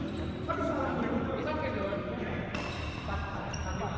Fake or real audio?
fake